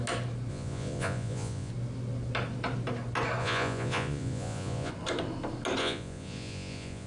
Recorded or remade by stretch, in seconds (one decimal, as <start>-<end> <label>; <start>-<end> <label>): 0.0-0.5 recorded; 0.5-1.7 remade; 1.7-3.4 recorded; 3.4-4.9 remade; 4.9-5.8 recorded; 5.8-7.1 remade